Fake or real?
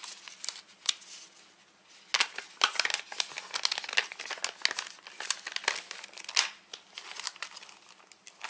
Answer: real